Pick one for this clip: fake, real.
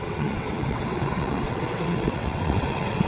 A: fake